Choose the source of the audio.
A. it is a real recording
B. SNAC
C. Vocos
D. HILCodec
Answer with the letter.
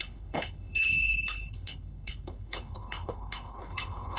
D